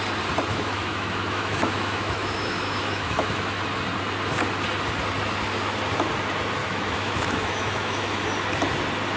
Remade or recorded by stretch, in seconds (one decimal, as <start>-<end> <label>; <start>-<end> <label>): 0.0-0.5 recorded; 0.5-3.6 remade; 3.6-6.6 recorded; 6.6-8.2 remade; 8.2-9.2 recorded